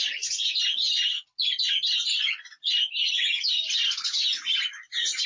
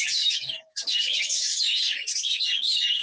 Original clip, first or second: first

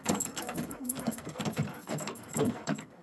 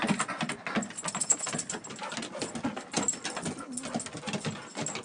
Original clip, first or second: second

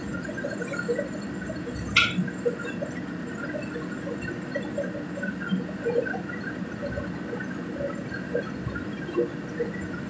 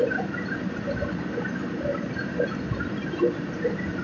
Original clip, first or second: first